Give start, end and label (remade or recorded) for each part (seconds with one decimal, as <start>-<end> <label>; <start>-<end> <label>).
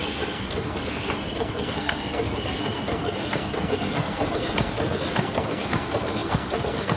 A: 0.0-7.0 remade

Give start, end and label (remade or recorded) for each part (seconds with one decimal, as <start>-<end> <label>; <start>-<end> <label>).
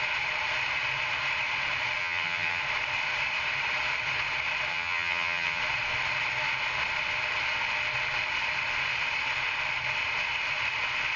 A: 0.0-2.0 recorded; 2.0-2.6 remade; 2.6-4.7 recorded; 4.7-5.6 remade; 5.6-11.2 recorded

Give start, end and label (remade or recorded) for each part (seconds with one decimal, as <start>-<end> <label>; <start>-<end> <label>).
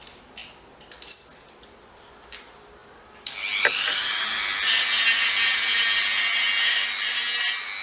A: 0.0-7.8 recorded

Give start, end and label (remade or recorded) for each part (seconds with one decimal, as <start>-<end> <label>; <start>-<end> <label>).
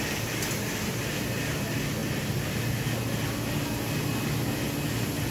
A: 0.0-5.3 recorded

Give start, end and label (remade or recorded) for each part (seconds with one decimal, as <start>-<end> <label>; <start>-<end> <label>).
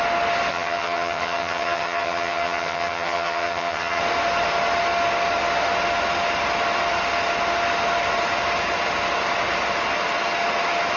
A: 0.0-0.5 recorded; 0.5-4.0 remade; 4.0-11.0 recorded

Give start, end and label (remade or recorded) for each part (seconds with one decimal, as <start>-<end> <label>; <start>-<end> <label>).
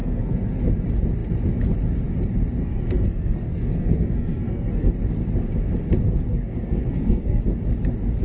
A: 0.0-0.6 remade; 0.6-2.6 recorded; 2.6-4.9 remade; 4.9-6.3 recorded; 6.3-7.4 remade; 7.4-8.2 recorded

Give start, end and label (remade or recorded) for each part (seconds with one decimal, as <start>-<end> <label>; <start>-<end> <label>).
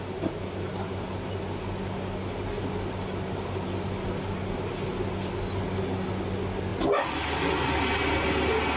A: 0.0-8.8 recorded